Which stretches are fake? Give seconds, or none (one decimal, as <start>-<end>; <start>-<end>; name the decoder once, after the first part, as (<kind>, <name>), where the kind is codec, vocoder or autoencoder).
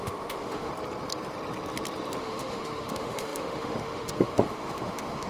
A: 0.0-0.7 (autoencoder, DAC-VAE); 2.2-5.3